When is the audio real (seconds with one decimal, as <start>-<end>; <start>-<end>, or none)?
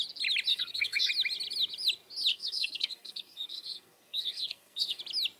0.0-0.5; 1.1-2.3; 5.0-5.4